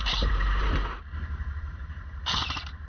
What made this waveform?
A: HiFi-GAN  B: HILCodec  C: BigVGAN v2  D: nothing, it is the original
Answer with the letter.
C